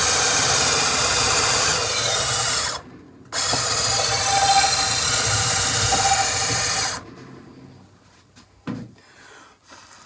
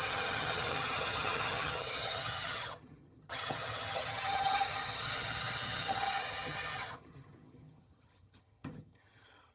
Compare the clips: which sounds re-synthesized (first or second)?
second